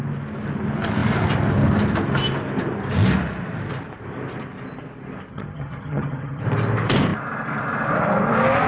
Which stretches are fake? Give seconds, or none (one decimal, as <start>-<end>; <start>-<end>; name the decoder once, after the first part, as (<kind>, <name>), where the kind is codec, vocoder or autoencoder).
5.3-6.4 (vocoder, HiFi-GAN)